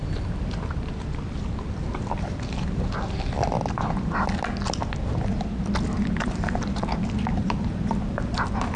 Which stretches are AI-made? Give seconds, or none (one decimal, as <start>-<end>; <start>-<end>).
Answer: none